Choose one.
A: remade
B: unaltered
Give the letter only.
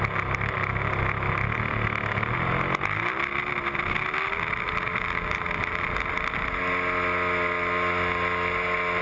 B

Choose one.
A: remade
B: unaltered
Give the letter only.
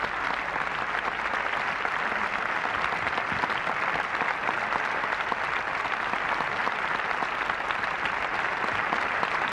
B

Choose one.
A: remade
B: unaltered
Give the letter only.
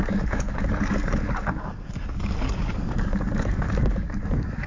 A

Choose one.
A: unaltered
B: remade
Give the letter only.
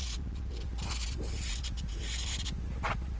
A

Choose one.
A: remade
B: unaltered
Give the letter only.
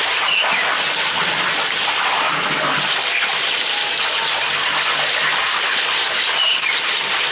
A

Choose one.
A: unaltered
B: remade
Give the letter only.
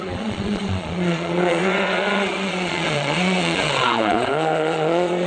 B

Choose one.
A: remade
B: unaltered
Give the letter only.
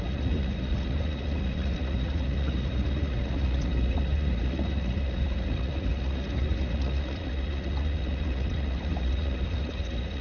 A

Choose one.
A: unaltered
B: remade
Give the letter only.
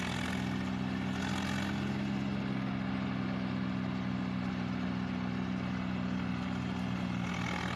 A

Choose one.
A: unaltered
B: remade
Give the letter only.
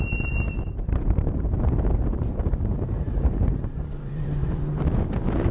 B